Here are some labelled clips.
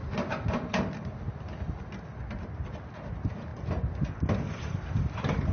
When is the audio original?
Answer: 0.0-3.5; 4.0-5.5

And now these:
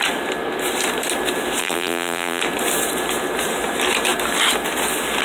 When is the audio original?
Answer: 0.0-1.6; 2.4-5.2